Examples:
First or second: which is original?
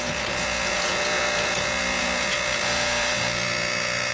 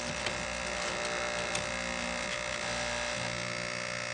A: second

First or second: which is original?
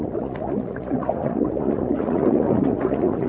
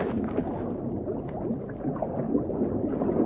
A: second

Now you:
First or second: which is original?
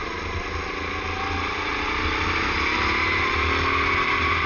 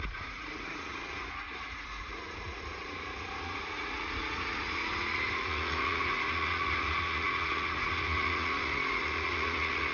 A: first